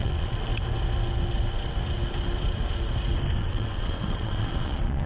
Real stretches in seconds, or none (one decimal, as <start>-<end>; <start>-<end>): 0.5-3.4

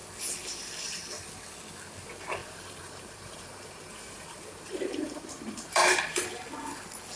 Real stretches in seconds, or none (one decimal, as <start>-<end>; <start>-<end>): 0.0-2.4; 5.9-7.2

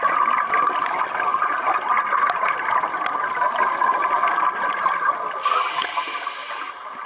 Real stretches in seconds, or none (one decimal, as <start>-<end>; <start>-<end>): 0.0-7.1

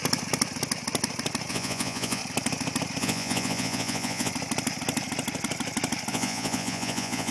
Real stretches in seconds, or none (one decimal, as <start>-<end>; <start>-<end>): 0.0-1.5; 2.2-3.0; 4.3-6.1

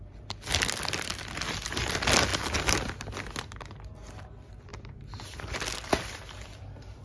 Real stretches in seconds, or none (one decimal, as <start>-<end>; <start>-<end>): 0.0-4.7; 5.5-7.0

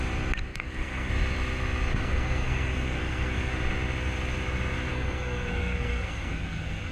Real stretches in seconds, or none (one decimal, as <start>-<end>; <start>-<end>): 0.0-0.5; 1.1-1.9; 3.5-4.9

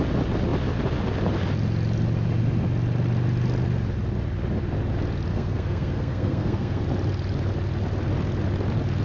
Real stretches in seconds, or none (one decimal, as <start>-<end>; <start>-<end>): 0.0-5.3; 6.8-9.0